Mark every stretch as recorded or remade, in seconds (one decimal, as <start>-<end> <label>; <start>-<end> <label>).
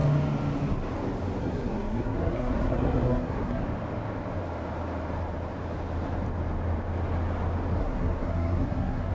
0.0-1.4 recorded; 1.4-3.6 remade; 3.6-7.8 recorded; 7.8-9.1 remade